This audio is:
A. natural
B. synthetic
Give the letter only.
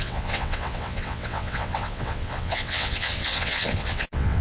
B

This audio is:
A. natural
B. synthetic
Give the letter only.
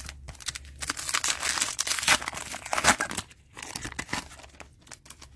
A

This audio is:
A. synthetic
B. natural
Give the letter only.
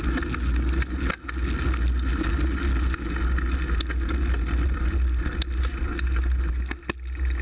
B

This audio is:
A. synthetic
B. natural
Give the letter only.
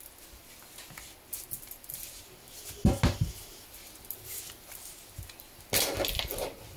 B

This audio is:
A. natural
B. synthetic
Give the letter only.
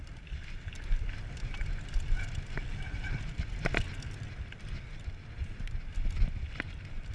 A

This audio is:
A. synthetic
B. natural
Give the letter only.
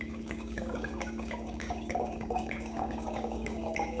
A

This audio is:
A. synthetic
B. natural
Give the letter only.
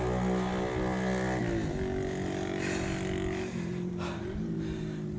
B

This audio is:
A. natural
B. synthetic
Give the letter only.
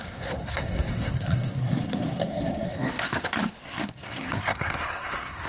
B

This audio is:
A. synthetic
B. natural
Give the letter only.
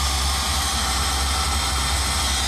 B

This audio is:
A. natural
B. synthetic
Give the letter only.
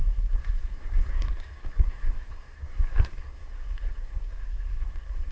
B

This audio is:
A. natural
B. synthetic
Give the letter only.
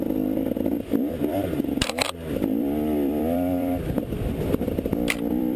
B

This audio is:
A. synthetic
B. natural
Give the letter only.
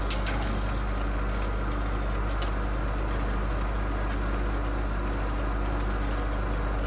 B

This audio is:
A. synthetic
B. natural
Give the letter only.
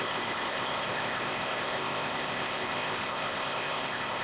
A